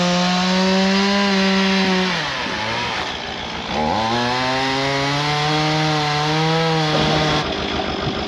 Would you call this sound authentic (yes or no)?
yes